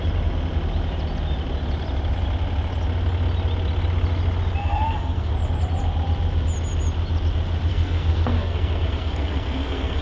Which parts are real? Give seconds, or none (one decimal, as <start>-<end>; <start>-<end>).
0.0-4.6; 5.3-7.7